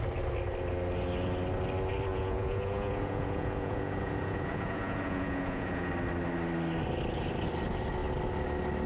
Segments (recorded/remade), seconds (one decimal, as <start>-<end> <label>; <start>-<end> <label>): 0.0-2.1 recorded; 2.1-5.9 remade; 5.9-8.9 recorded